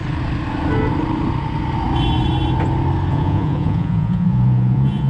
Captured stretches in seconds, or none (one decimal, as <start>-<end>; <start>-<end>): 0.0-3.1